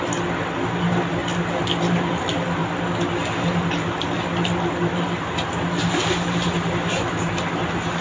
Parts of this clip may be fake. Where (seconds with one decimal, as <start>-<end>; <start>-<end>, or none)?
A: none